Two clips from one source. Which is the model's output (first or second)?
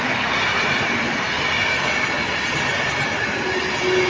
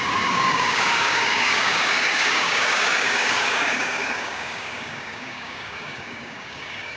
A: second